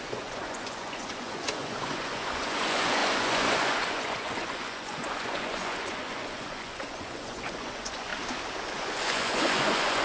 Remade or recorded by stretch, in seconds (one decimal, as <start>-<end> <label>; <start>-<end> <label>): 0.0-8.1 remade; 8.1-8.7 recorded; 8.7-10.0 remade